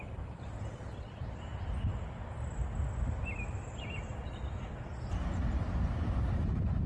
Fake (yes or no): no